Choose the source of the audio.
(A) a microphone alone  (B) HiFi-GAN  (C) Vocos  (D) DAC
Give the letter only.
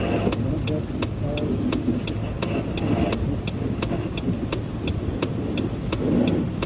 A